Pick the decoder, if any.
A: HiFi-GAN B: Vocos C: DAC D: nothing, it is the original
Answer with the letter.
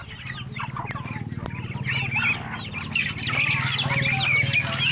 D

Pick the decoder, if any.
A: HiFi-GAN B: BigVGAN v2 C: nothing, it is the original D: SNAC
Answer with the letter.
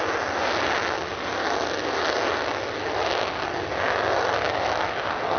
C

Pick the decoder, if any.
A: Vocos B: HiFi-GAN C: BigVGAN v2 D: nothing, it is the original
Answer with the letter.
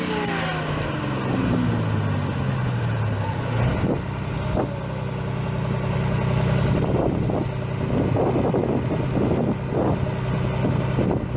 D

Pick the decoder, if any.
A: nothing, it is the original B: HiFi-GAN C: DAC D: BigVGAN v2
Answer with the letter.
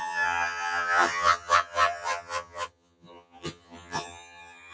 B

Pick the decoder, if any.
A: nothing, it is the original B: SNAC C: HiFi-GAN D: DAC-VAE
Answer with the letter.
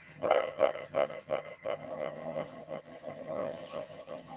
C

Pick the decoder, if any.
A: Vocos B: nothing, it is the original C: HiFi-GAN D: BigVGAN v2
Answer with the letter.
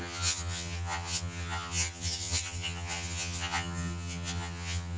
C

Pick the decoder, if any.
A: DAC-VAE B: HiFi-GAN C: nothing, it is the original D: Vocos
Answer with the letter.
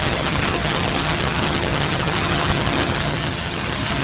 B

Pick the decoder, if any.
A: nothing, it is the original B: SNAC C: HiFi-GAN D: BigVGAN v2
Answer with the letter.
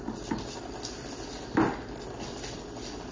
A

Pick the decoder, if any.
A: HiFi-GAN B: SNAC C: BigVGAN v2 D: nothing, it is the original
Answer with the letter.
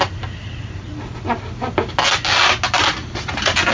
D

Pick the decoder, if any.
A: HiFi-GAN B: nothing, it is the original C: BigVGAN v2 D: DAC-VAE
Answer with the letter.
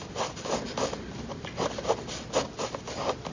B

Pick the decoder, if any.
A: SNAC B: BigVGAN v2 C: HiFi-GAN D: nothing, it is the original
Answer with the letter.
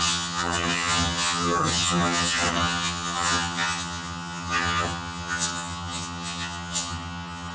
C